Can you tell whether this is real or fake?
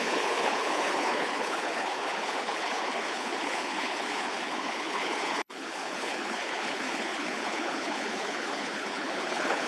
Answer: fake